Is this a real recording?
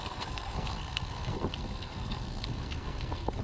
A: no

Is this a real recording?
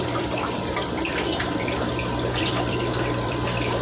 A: no